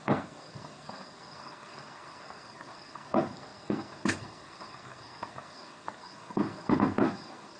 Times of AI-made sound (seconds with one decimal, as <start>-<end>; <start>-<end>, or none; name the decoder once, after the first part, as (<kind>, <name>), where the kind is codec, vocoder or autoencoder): 0.0-7.6 (codec, SNAC)